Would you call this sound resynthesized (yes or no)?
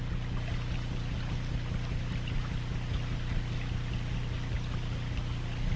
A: no